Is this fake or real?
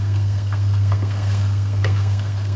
fake